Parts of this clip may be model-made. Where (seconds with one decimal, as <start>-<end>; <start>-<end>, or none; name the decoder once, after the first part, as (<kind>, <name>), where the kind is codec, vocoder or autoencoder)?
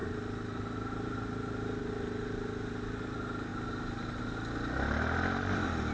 none